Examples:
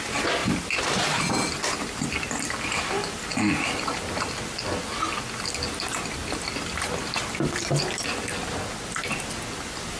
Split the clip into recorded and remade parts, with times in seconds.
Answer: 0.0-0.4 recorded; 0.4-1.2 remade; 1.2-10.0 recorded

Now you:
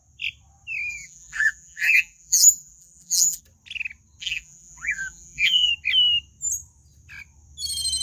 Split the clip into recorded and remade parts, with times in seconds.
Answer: 0.0-0.9 recorded; 0.9-3.4 remade; 3.4-4.2 recorded; 4.2-5.7 remade; 5.7-8.0 recorded

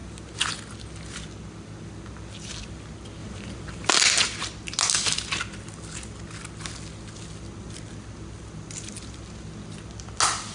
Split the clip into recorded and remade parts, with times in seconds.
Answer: 0.0-3.2 recorded; 3.2-3.9 remade; 3.9-10.5 recorded

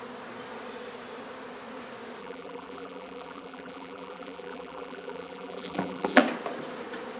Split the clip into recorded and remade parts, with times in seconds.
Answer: 0.0-2.2 recorded; 2.2-6.2 remade; 6.2-7.2 recorded

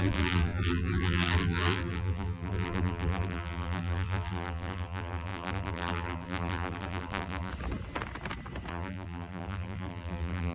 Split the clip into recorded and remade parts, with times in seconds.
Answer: 0.0-7.5 remade; 7.5-8.7 recorded; 8.7-10.5 remade

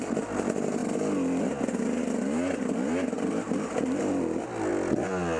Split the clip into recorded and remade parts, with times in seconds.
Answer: 0.0-5.4 recorded

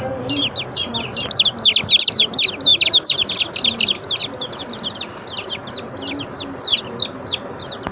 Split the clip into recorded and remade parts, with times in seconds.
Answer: 0.0-5.6 recorded; 5.6-6.8 remade; 6.8-7.9 recorded